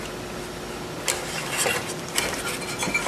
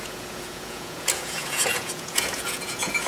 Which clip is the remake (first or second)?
second